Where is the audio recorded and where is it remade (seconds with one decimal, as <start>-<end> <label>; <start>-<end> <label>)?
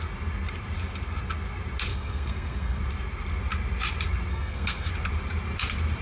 0.0-1.9 recorded; 1.9-2.8 remade; 2.8-4.3 recorded; 4.3-4.9 remade; 4.9-6.0 recorded